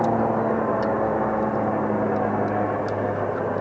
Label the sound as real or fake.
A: real